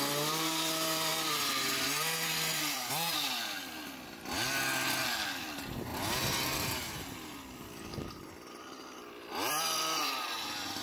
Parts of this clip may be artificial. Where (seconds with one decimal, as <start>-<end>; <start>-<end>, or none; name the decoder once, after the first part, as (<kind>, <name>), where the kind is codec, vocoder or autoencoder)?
0.0-5.9 (vocoder, BigVGAN v2); 9.5-10.8